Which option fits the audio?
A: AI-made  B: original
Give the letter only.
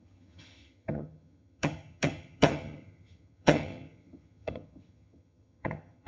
A